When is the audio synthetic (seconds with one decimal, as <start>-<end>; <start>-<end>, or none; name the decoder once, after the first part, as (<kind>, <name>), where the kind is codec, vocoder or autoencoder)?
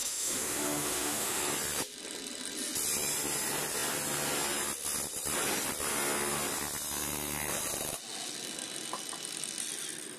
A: 0.0-1.4 (autoencoder, DAC-VAE)